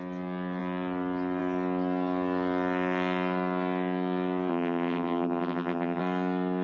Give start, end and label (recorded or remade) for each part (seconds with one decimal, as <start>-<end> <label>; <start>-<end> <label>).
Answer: 0.0-4.5 recorded; 4.5-6.0 remade; 6.0-6.6 recorded